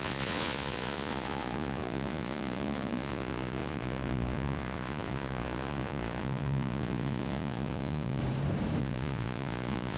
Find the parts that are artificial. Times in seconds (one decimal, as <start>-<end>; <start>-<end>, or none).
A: 0.0-8.2; 8.8-10.0